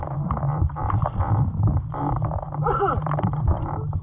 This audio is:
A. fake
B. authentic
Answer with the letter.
A